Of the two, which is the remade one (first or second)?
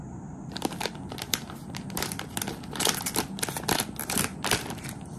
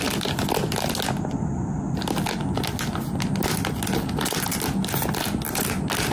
first